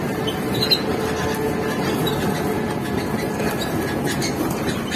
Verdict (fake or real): real